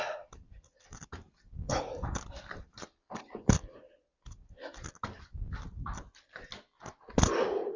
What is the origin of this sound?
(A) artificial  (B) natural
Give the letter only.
B